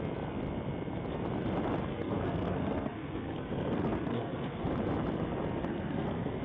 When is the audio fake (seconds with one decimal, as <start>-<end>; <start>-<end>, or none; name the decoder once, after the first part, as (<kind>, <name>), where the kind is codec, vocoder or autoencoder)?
1.9-4.7 (codec, SNAC); 5.6-6.4